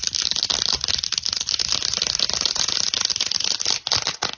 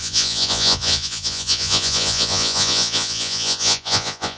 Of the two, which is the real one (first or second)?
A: first